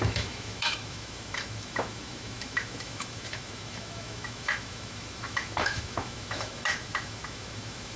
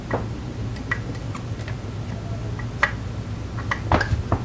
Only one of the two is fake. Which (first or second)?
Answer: first